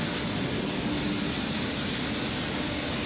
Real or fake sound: real